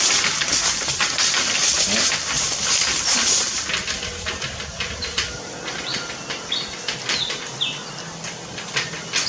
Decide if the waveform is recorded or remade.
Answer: recorded